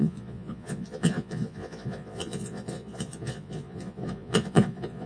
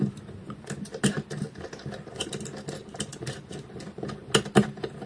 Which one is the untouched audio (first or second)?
second